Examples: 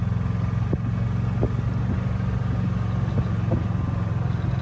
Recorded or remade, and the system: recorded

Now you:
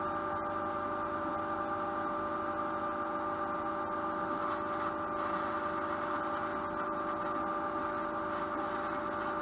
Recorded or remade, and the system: recorded